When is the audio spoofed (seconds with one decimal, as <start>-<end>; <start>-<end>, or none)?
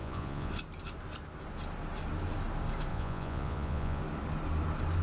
0.0-0.5; 2.9-4.0